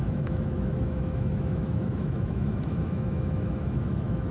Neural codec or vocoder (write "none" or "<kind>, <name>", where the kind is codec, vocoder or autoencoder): autoencoder, DAC-VAE